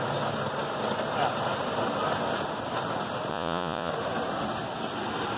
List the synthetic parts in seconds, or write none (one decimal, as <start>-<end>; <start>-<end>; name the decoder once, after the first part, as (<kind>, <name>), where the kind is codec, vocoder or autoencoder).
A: 3.3-3.9 (vocoder, Vocos)